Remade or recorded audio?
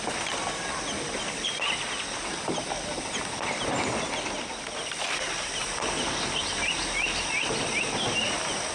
recorded